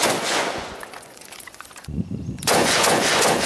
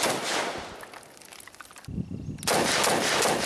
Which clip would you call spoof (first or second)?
first